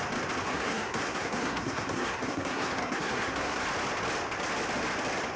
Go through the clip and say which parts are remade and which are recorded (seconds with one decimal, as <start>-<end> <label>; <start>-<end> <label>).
0.0-0.4 recorded; 0.4-3.6 remade; 3.6-5.4 recorded